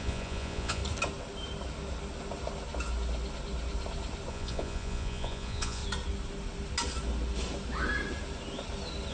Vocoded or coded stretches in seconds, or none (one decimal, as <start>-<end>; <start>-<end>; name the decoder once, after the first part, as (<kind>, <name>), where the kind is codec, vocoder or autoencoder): 0.0-0.8 (vocoder, Vocos); 4.3-5.8